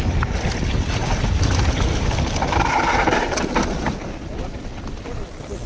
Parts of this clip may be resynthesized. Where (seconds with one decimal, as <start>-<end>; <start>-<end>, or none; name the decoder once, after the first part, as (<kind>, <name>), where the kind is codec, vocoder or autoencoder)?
0.0-5.7 (vocoder, BigVGAN v2)